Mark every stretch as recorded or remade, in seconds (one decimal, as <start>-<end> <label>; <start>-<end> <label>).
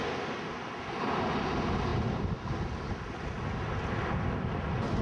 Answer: 0.0-5.0 recorded